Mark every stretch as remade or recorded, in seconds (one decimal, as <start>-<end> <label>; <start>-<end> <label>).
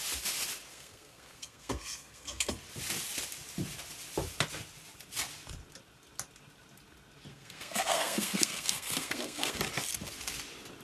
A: 0.0-0.7 recorded; 0.7-2.5 remade; 2.5-7.3 recorded; 7.3-9.6 remade; 9.6-10.8 recorded